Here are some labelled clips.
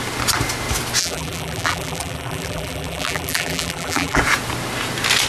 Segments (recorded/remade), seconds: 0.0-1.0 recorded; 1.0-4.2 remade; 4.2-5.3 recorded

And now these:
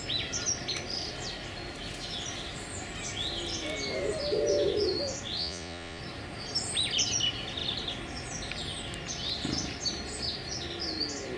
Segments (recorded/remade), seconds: 0.0-5.4 recorded; 5.4-6.0 remade; 6.0-11.4 recorded

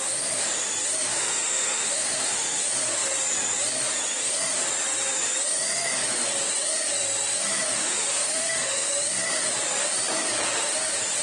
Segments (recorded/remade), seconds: 0.0-1.1 recorded; 1.1-2.6 remade; 2.6-7.8 recorded; 7.8-8.9 remade; 8.9-11.2 recorded